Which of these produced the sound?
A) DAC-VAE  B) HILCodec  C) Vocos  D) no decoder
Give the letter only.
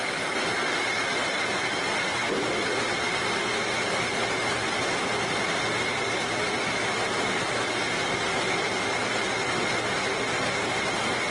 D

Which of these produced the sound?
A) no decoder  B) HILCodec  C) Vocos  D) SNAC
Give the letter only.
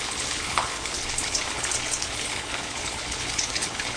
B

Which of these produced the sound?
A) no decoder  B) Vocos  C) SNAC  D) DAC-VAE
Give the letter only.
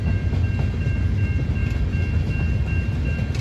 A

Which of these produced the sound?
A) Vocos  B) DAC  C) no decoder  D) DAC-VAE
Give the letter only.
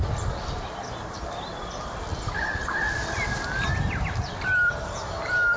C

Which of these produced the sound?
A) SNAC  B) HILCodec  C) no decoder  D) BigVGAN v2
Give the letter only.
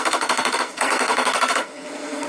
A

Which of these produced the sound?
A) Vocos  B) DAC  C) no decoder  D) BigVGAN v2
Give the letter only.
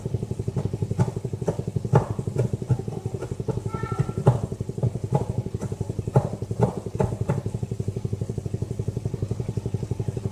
C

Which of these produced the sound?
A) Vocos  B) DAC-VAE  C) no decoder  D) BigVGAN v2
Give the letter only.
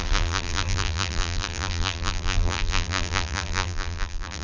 D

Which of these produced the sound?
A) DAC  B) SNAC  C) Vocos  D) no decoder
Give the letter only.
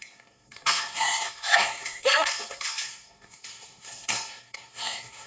B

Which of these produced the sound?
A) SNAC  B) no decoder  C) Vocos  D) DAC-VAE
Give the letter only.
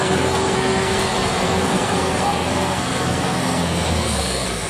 A